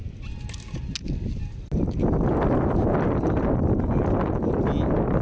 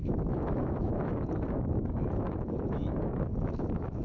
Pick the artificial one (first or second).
second